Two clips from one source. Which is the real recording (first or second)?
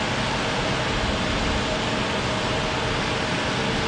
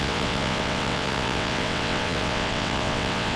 first